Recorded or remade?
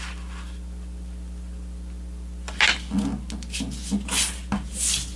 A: recorded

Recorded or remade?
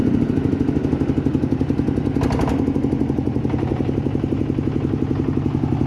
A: recorded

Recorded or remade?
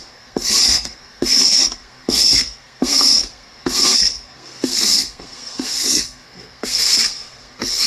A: remade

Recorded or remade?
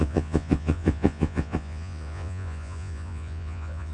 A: remade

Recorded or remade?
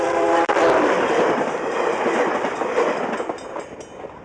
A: remade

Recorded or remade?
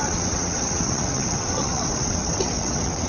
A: remade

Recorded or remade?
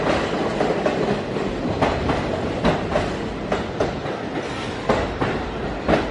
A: recorded